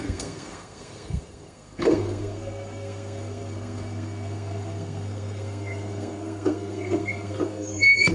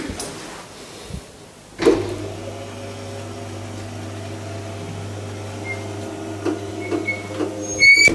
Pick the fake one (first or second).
first